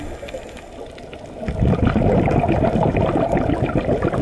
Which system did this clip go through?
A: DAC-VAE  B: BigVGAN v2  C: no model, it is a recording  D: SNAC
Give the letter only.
C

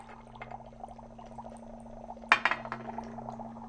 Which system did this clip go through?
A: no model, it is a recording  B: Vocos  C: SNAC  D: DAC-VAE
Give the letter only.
A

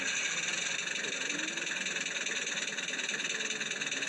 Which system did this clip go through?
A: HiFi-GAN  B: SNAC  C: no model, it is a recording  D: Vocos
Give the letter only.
C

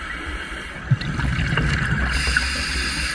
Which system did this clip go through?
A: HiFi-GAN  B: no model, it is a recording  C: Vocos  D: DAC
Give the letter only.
B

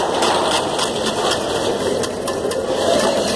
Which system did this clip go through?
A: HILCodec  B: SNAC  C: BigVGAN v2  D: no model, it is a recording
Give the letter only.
D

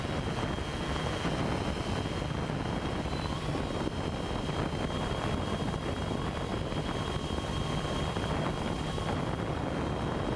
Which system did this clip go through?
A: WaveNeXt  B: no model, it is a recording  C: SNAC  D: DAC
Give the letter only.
B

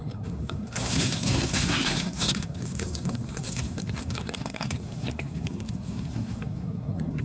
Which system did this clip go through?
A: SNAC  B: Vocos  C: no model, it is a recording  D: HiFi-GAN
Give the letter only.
A